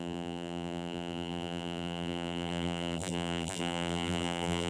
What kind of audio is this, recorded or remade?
remade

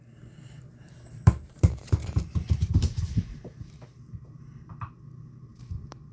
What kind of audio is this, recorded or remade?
remade